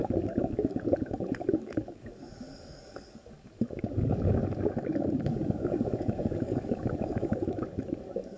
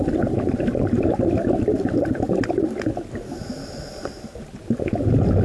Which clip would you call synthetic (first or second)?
first